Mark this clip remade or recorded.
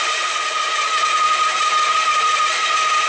recorded